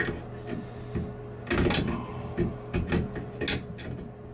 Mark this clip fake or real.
real